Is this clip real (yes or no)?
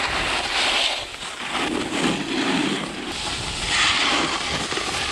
yes